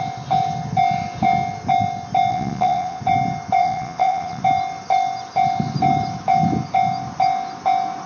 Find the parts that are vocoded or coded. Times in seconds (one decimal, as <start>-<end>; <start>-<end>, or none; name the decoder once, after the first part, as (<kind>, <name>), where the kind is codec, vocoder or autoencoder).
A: 2.3-3.0 (vocoder, Vocos); 3.6-4.4